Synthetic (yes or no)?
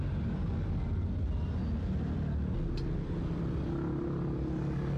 no